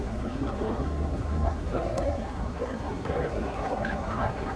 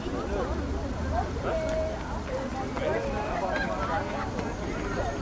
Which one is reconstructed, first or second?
first